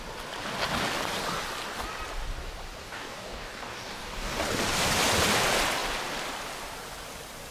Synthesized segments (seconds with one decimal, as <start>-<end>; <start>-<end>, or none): 2.8-4.4